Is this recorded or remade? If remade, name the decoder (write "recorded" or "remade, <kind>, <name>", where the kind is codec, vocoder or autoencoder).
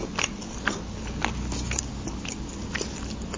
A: recorded